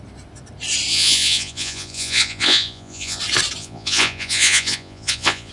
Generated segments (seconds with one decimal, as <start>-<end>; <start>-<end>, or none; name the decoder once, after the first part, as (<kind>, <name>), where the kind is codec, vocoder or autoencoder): 0.9-3.2 (vocoder, Vocos); 3.6-5.5